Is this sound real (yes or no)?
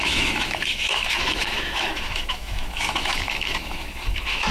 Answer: no